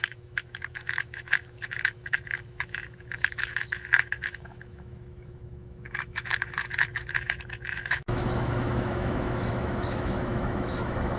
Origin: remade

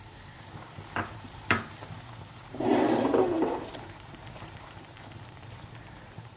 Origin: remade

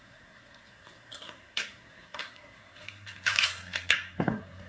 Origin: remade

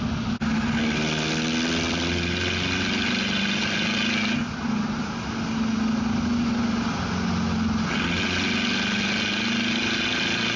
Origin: recorded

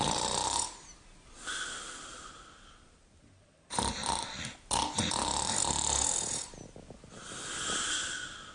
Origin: recorded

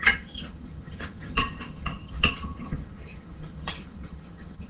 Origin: remade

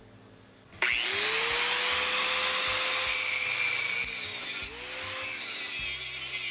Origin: recorded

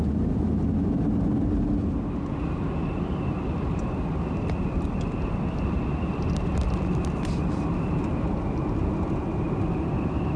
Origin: recorded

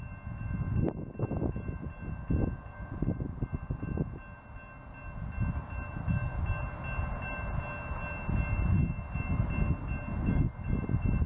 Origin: recorded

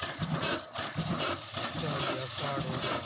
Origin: recorded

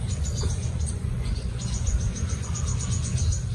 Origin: remade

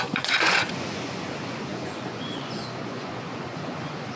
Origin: remade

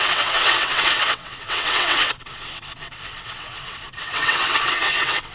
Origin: remade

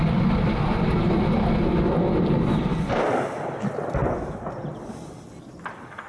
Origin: recorded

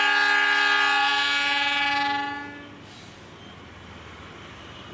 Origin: recorded